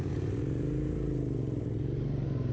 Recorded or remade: recorded